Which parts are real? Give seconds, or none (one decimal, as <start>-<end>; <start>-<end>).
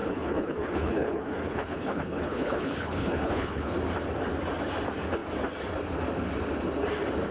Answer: 3.7-7.3